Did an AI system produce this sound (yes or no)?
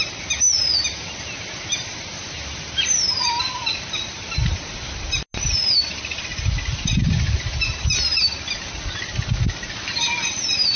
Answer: no